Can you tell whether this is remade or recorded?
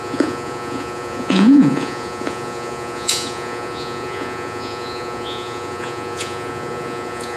remade